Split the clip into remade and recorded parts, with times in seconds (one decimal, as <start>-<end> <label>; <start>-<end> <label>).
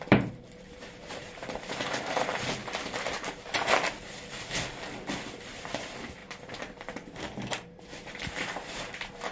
0.0-2.6 remade; 2.6-5.3 recorded; 5.3-9.3 remade